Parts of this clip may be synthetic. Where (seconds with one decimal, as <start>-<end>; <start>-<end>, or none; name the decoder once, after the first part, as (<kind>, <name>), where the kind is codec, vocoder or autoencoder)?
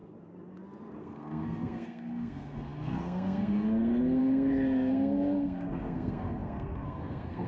1.0-7.5 (codec, SNAC)